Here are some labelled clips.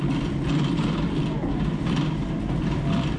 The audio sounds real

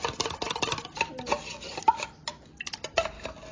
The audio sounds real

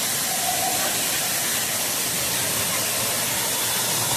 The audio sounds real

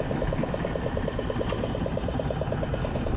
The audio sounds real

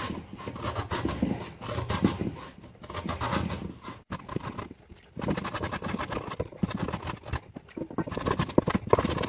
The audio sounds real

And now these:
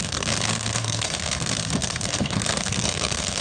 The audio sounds fake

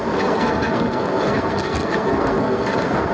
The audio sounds fake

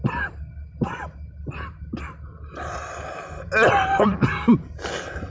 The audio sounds real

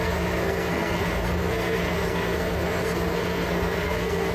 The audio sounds fake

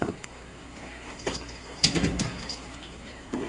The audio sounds fake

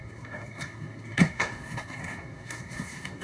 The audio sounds fake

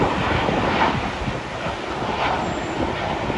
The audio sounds real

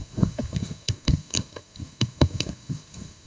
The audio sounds fake